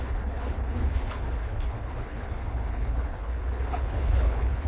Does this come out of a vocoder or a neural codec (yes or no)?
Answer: yes